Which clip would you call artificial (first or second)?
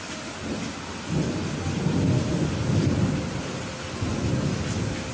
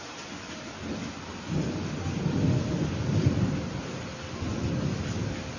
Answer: second